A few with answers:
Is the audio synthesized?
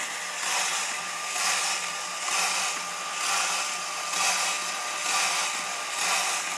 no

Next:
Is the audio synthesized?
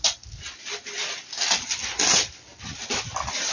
no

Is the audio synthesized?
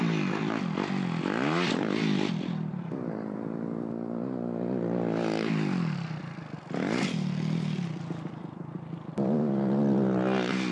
no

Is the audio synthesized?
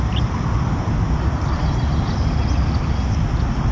yes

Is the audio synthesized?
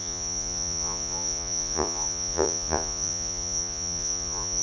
yes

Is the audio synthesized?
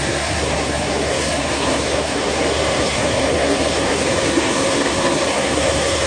yes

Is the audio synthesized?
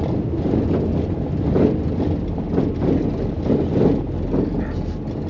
no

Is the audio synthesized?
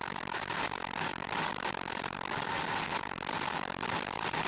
no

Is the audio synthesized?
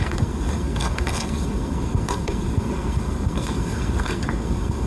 yes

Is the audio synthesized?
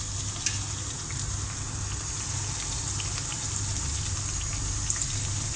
no